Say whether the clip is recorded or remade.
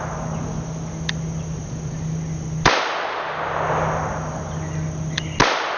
recorded